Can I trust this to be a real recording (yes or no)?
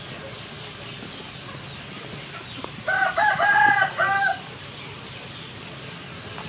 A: yes